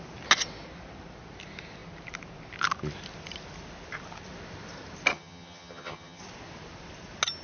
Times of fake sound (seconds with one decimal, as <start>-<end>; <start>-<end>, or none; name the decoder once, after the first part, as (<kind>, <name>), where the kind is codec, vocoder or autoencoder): 5.1-6.2 (vocoder, HiFi-GAN)

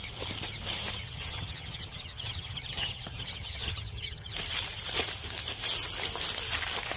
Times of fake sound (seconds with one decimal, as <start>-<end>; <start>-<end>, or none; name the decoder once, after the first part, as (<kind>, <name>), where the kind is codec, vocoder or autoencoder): 1.0-4.3 (vocoder, HiFi-GAN)

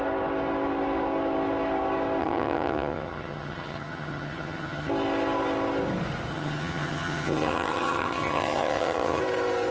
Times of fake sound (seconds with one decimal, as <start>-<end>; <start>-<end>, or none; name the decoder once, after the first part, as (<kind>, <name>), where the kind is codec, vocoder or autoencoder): 2.2-4.9 (vocoder, HiFi-GAN); 6.3-9.2

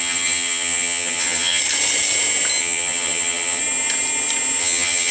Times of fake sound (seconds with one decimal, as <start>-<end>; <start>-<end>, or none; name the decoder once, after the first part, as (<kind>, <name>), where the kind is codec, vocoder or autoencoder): 0.0-1.6 (vocoder, HiFi-GAN); 2.6-3.6; 4.6-5.1

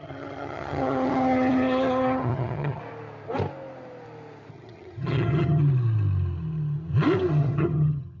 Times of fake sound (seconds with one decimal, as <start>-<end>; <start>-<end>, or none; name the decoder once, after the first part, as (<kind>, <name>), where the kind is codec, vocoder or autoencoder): 0.0-2.8 (vocoder, HiFi-GAN); 4.5-5.6; 7.3-8.2

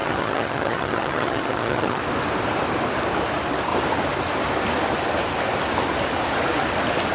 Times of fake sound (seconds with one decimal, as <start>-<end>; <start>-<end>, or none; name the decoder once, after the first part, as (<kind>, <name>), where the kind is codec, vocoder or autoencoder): 0.0-2.0 (vocoder, HiFi-GAN)